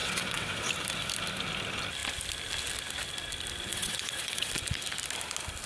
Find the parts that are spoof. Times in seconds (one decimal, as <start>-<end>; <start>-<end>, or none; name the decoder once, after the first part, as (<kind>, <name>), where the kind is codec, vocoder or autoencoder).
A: 0.0-0.7 (vocoder, WaveNeXt); 3.7-4.5